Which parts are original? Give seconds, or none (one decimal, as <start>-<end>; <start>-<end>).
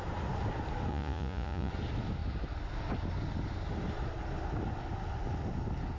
0.0-0.9; 1.7-6.0